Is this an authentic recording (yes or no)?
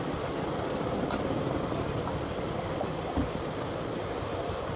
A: yes